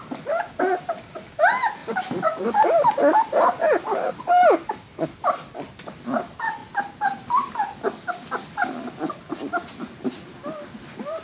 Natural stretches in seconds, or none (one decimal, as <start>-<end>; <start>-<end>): 0.0-1.8; 4.2-6.6; 7.5-11.2